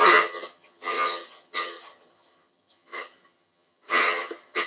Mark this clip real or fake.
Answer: fake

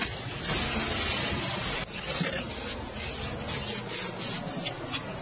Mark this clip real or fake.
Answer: real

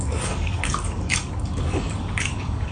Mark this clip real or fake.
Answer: fake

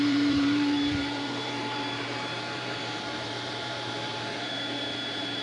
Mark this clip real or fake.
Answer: fake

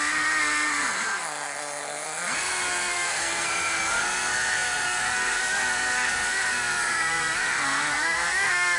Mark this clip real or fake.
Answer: fake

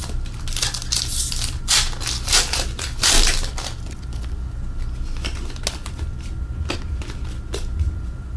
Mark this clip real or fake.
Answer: real